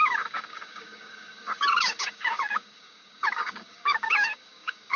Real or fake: fake